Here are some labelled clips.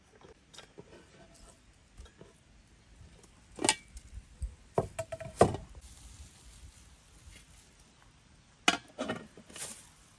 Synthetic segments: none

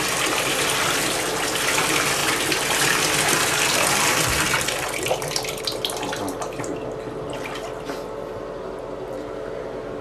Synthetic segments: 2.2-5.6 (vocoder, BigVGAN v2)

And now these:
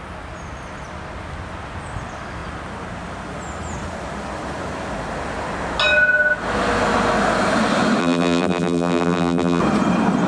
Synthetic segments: 8.0-9.6 (vocoder, BigVGAN v2)